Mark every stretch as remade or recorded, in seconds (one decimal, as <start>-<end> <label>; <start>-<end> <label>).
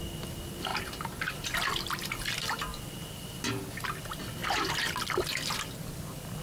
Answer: 0.0-6.4 recorded